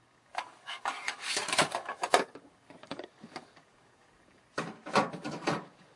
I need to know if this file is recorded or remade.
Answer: remade